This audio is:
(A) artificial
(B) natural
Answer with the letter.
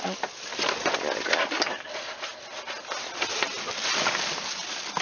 B